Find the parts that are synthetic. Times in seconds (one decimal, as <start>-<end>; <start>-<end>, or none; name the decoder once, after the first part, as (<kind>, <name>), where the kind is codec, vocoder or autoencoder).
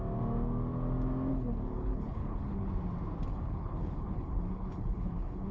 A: 1.3-2.7 (codec, HILCodec); 3.3-5.5